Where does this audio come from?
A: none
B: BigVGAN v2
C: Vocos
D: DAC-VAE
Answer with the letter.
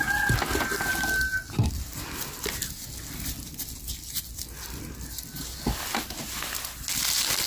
A